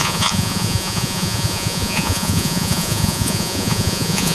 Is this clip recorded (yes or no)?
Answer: no